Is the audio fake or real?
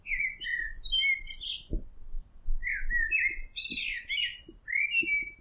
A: real